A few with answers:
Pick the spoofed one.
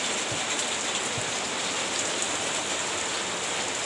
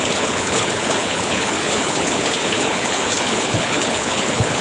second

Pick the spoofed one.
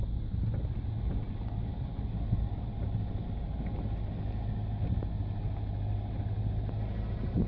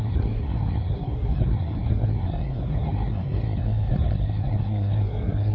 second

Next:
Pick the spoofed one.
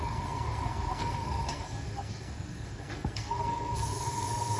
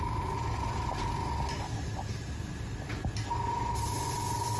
first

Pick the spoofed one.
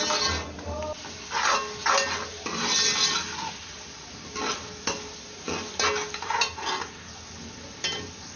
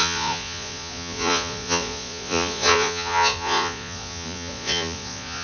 second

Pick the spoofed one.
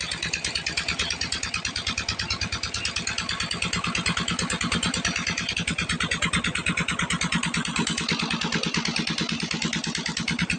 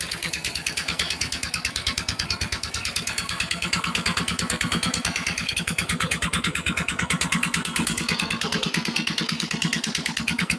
second